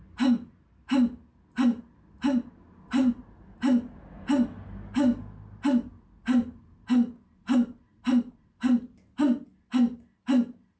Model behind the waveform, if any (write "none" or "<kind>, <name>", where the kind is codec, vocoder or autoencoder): none